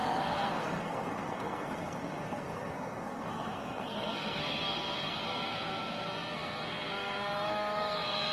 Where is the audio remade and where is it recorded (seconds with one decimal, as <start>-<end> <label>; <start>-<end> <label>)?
0.0-8.3 remade